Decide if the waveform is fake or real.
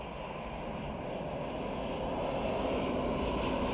real